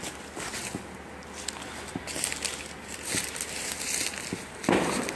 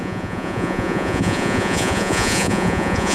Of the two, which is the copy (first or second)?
second